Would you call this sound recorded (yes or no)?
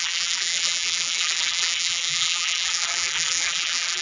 no